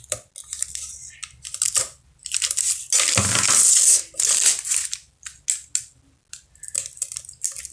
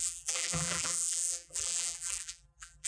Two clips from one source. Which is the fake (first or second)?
second